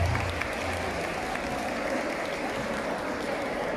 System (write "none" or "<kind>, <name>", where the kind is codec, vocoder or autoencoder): none